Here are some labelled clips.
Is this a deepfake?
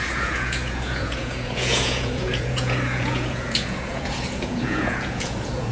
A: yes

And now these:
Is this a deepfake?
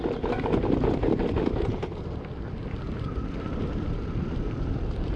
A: no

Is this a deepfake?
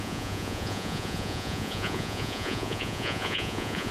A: yes